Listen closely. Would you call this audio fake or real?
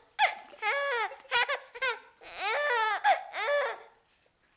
real